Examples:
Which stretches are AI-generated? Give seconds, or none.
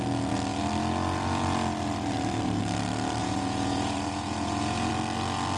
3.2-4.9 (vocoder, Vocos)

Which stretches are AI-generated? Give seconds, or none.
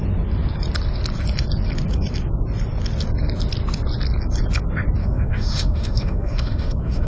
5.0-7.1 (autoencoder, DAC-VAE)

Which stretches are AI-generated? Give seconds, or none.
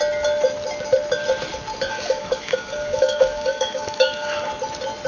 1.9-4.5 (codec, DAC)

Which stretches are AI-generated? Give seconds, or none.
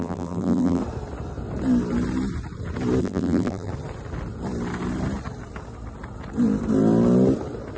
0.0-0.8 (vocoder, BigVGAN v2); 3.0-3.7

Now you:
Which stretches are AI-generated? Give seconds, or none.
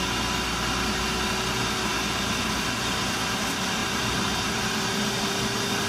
3.8-4.7 (vocoder, BigVGAN v2)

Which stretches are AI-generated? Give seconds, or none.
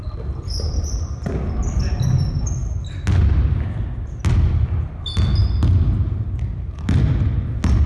none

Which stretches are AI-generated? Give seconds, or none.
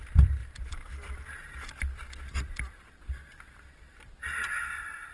0.0-0.4 (vocoder, BigVGAN v2); 2.3-5.1